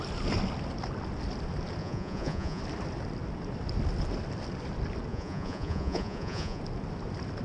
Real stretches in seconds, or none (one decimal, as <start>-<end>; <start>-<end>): 0.0-1.8; 2.6-5.1; 6.6-7.4